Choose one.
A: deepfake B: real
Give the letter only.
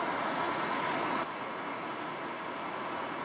A